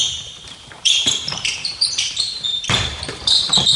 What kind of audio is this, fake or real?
fake